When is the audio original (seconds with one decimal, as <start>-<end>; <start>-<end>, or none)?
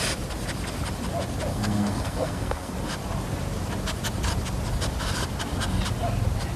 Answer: 0.0-1.5; 2.7-6.6